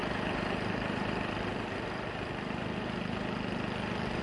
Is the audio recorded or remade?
recorded